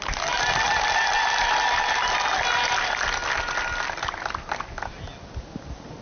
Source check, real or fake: real